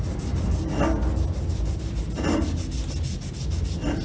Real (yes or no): yes